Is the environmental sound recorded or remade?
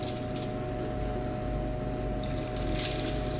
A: recorded